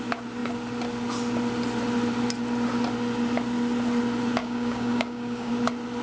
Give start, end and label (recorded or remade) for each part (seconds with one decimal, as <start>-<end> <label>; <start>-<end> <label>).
0.0-4.4 recorded; 4.4-5.5 remade; 5.5-6.0 recorded

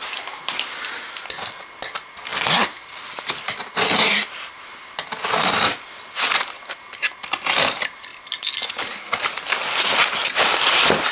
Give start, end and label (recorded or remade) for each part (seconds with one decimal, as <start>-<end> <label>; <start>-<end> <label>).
0.0-11.1 recorded